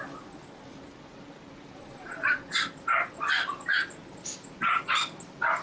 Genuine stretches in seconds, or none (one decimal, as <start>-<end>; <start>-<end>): 0.0-1.8; 2.6-5.6